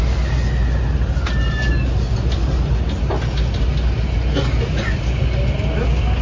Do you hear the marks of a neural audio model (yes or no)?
no